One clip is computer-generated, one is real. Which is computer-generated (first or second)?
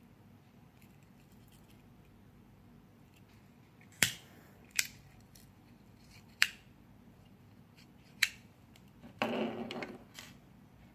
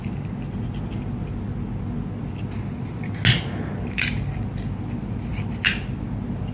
first